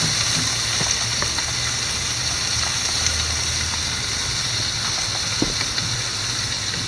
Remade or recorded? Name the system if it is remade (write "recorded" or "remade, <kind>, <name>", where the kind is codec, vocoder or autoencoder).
recorded